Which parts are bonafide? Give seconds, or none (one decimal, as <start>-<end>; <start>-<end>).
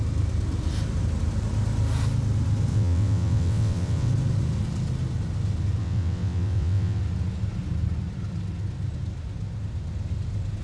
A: 0.0-2.7; 4.1-5.8; 7.0-10.6